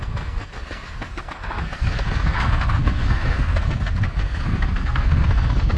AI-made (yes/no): yes